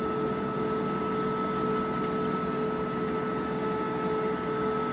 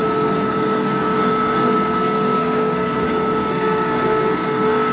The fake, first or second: second